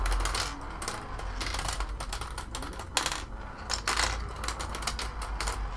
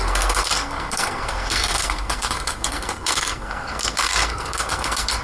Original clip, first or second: first